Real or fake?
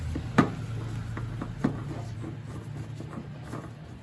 real